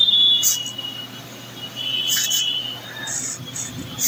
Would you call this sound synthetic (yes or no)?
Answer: no